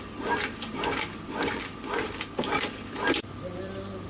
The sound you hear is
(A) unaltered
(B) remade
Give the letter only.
B